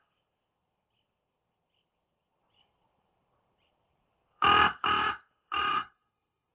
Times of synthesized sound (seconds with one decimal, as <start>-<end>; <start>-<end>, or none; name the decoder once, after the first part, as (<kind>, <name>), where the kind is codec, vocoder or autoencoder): 5.7-6.5 (codec, HILCodec)